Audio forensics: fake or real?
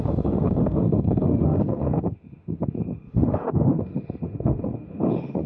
fake